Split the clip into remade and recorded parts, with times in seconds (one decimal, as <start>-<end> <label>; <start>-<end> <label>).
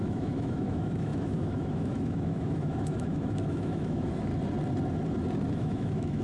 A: 0.0-4.3 remade; 4.3-5.5 recorded; 5.5-6.2 remade